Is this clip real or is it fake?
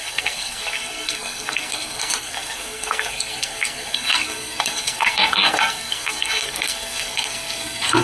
fake